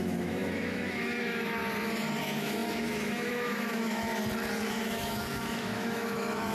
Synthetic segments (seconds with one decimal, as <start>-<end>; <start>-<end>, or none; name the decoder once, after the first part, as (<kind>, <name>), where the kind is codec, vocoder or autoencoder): 0.0-1.6 (autoencoder, DAC-VAE); 2.2-4.1; 4.7-6.5